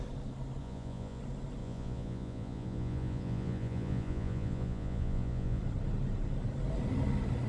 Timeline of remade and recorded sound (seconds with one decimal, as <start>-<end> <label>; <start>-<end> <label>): 0.0-0.6 recorded; 0.6-1.2 remade; 1.2-1.6 recorded; 1.6-5.6 remade; 5.6-7.5 recorded